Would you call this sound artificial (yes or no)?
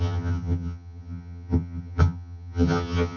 yes